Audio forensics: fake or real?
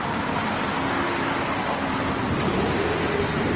real